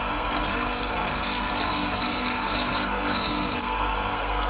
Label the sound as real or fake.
fake